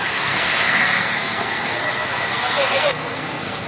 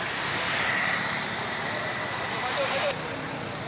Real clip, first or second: second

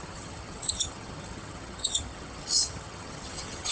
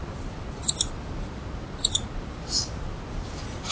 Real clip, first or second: second